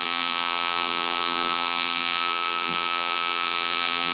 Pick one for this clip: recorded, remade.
remade